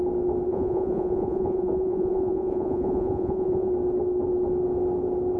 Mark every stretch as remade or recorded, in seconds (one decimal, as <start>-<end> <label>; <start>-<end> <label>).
0.0-0.5 recorded; 0.5-3.7 remade; 3.7-5.4 recorded